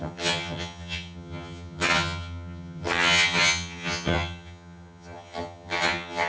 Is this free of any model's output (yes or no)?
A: no